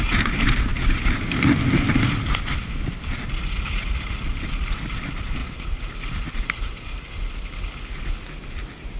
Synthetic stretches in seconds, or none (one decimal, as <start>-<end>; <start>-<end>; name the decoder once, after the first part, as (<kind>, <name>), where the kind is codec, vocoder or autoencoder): 0.7-1.2 (vocoder, BigVGAN v2); 3.4-4.6; 5.4-7.6